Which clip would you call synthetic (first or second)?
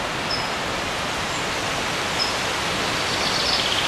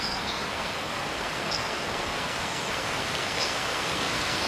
second